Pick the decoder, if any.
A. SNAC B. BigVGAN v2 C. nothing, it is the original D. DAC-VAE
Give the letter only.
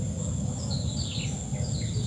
C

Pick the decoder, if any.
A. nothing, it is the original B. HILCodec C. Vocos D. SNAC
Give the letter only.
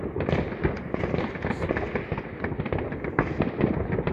A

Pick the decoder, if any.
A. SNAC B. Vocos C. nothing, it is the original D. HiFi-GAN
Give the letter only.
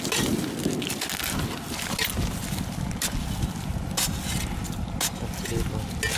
C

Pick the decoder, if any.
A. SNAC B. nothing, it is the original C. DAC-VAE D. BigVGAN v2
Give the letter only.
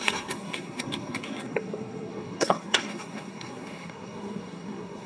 A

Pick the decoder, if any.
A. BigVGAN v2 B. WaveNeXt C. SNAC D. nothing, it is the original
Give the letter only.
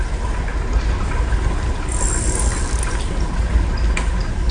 D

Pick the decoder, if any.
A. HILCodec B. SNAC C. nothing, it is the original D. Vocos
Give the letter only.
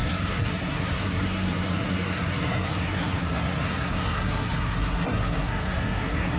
B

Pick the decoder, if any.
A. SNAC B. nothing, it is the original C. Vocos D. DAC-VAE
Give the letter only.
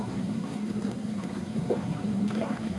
A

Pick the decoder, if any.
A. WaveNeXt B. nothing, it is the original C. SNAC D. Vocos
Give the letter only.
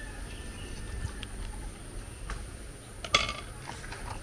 B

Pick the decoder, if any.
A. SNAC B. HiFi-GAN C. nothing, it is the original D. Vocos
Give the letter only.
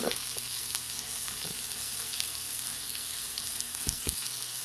A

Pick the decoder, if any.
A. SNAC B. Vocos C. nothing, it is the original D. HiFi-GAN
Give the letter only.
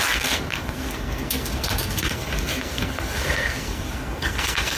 A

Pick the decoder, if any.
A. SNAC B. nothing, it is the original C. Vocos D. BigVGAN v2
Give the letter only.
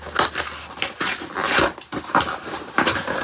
B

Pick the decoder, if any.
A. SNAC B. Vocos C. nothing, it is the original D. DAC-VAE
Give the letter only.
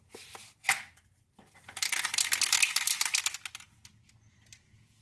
C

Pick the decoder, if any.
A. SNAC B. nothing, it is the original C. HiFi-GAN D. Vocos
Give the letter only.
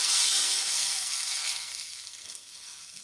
A